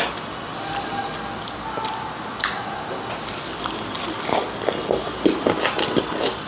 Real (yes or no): yes